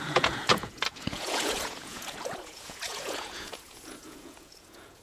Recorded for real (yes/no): no